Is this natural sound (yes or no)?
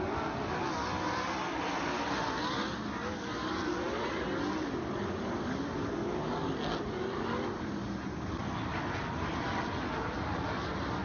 yes